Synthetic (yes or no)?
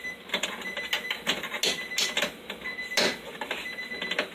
no